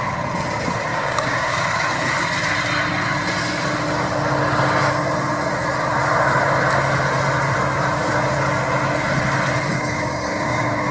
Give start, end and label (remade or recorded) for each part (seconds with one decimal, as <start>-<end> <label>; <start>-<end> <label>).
0.0-0.9 recorded; 0.9-1.6 remade; 1.6-9.7 recorded; 9.7-10.9 remade